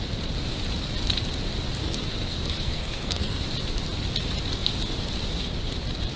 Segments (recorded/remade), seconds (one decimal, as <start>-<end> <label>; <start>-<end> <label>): 0.0-1.8 recorded; 1.8-3.4 remade; 3.4-6.2 recorded